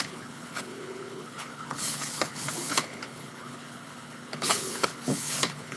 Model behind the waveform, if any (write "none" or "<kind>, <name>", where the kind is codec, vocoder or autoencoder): codec, HILCodec